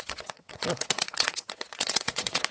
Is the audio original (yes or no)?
no